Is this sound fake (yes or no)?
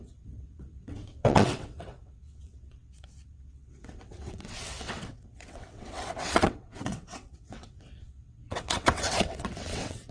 yes